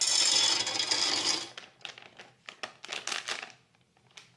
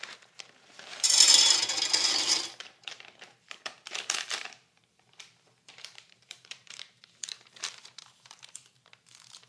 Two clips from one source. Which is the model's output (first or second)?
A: second